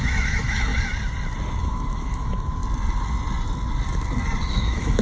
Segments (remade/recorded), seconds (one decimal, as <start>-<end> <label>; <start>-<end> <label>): 0.0-0.7 remade; 0.7-1.6 recorded; 1.6-2.6 remade; 2.6-4.5 recorded; 4.5-5.0 remade